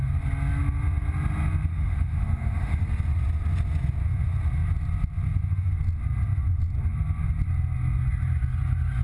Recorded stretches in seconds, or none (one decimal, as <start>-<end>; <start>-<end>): 0.0-1.7; 2.8-9.0